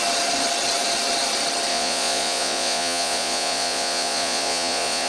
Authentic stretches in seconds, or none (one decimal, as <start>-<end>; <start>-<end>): 0.0-1.7